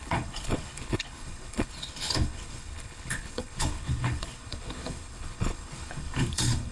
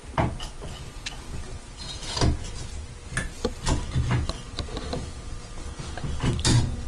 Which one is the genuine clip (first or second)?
second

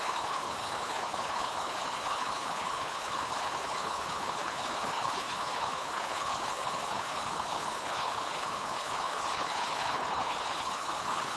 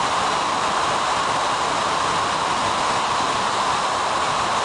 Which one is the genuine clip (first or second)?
second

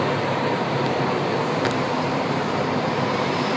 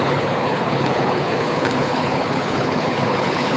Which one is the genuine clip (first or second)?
first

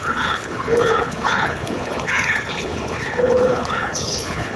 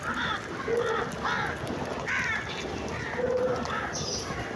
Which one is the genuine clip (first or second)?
second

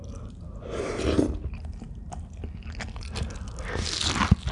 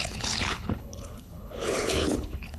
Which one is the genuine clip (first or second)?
first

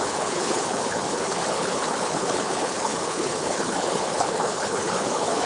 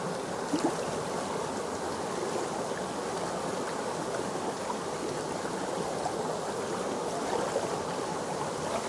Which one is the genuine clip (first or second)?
second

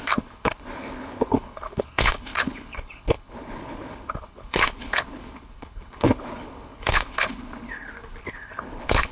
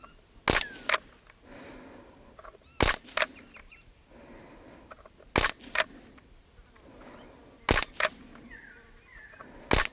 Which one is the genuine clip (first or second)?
second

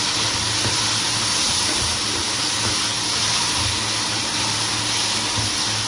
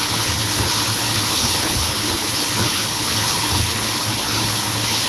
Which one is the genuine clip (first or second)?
first